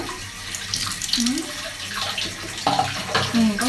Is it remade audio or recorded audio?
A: recorded